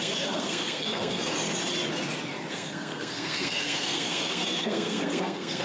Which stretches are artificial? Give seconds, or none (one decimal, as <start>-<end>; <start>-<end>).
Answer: 0.0-1.3; 2.5-5.6